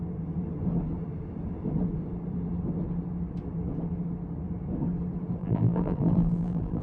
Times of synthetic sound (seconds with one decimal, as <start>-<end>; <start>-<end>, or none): 5.4-6.8